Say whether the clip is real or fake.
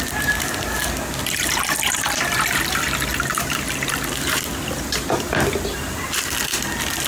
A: fake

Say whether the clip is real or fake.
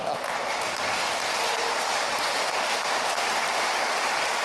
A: fake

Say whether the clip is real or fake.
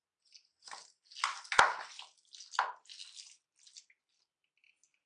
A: real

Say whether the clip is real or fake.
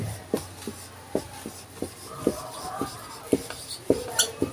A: real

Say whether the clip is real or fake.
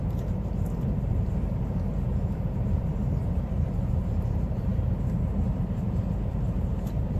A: fake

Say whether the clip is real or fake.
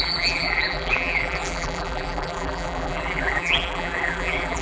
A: fake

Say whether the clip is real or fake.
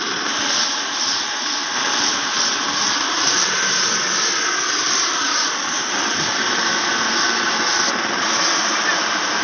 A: fake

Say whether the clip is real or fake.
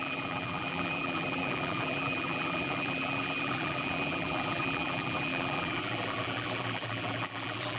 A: fake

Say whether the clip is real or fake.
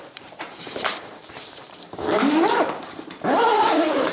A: fake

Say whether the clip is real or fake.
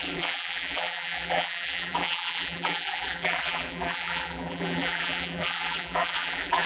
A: fake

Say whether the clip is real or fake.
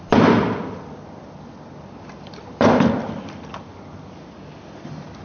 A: fake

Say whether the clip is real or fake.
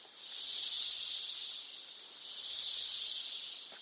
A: real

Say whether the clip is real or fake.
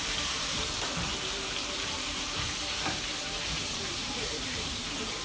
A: fake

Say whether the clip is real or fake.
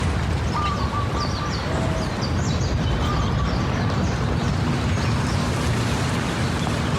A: real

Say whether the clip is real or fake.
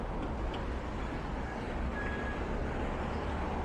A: real